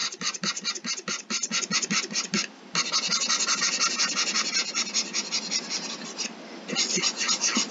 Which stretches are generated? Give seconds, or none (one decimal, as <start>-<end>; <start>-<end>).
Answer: none